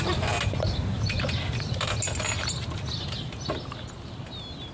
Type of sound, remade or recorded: recorded